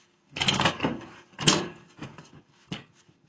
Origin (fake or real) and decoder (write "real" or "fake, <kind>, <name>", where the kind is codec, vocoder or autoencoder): fake, codec, DAC